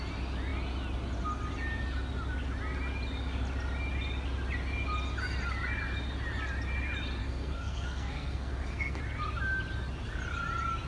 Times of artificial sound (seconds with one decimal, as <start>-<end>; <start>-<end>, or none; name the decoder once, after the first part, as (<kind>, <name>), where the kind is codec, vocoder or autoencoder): 7.2-9.0 (codec, SNAC)